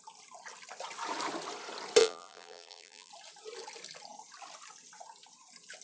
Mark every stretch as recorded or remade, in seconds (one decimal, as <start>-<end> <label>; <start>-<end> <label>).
0.0-2.0 recorded; 2.0-3.1 remade; 3.1-5.8 recorded